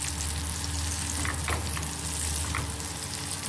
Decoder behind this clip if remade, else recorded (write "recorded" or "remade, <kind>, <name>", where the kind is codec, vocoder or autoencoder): recorded